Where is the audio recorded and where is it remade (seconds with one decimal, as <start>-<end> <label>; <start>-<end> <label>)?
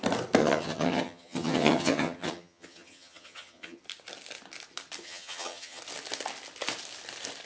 0.0-0.4 recorded; 0.4-3.8 remade; 3.8-5.0 recorded; 5.0-5.8 remade; 5.8-7.5 recorded